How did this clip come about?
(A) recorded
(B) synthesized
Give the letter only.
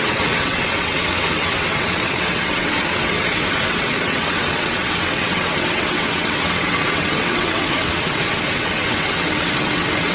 B